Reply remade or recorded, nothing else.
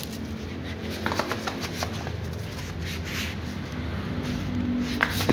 recorded